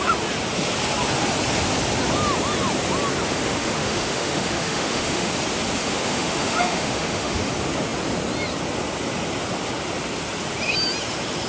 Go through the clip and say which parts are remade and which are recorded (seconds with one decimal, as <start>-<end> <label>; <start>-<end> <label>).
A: 0.0-3.3 recorded; 3.3-5.3 remade; 5.3-5.8 recorded; 5.8-7.5 remade; 7.5-11.5 recorded